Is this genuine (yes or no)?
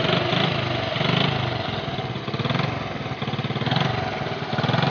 yes